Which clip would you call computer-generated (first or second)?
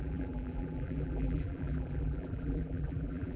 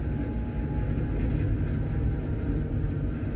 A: first